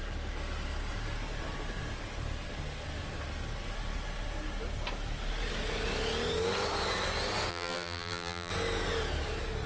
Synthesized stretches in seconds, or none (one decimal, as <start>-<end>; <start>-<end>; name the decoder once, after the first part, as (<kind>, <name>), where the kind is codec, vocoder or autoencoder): 7.5-8.5 (vocoder, BigVGAN v2)